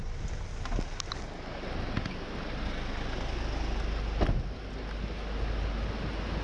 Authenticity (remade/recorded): recorded